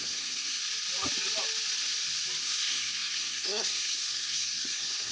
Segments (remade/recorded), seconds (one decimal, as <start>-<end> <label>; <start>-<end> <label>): 0.0-0.6 remade; 0.6-2.4 recorded; 2.4-5.1 remade